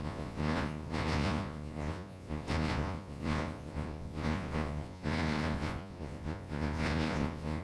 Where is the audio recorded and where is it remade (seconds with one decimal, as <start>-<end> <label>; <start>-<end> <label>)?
0.0-7.6 remade